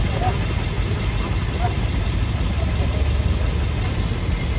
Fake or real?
real